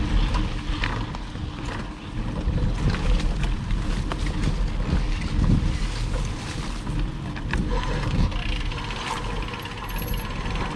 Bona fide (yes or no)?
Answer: yes